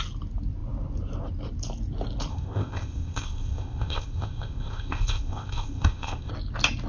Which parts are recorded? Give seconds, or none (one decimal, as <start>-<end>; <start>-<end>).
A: 0.0-2.3; 6.3-6.9